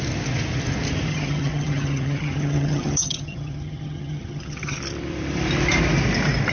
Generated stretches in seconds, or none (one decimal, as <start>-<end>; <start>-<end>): 1.1-4.8